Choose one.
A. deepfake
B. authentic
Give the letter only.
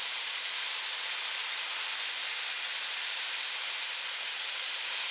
B